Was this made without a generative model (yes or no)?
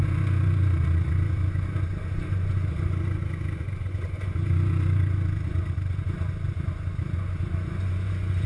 no